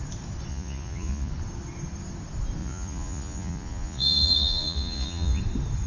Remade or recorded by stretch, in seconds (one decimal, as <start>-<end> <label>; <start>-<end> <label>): 0.0-0.5 recorded; 0.5-1.3 remade; 1.3-2.6 recorded; 2.6-5.4 remade; 5.4-5.9 recorded